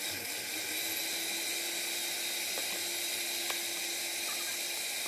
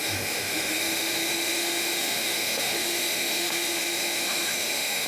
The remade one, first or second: second